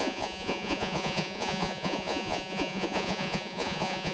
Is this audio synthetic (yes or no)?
yes